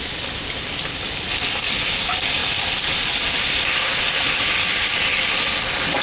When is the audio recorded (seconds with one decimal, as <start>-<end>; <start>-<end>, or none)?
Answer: none